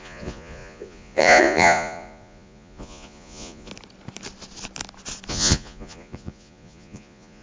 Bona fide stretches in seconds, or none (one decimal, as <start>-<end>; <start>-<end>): 3.7-5.3